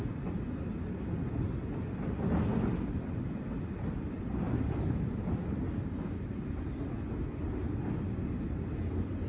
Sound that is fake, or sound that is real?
real